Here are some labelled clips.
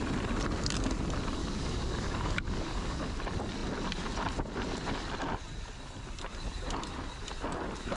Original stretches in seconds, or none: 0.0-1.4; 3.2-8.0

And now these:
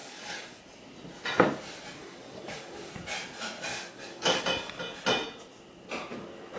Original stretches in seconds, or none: 0.6-2.0; 2.9-3.7; 4.4-6.6

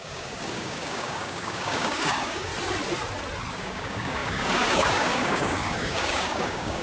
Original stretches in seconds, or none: 2.5-3.5